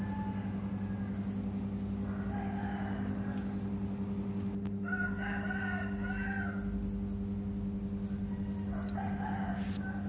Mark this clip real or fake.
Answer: real